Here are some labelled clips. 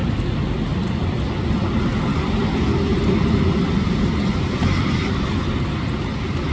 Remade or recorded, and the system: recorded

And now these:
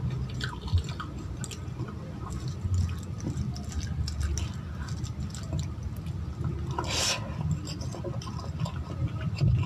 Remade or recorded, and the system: recorded